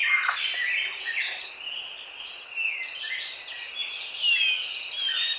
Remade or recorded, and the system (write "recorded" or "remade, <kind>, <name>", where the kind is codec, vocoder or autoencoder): recorded